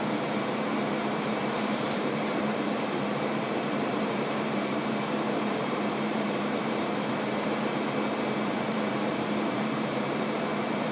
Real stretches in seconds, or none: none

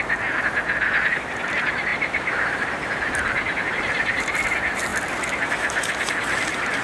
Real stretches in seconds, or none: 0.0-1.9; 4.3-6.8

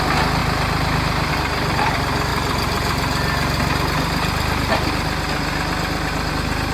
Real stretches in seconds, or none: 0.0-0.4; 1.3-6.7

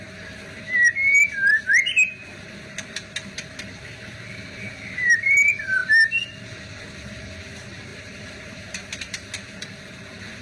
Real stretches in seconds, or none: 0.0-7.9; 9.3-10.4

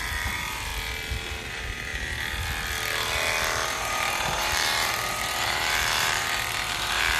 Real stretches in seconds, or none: 0.7-1.5; 1.9-3.7

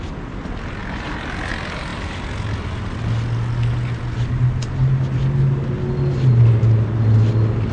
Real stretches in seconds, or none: 0.0-7.7

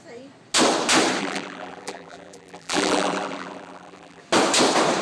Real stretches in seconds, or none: 0.0-1.2; 4.2-5.0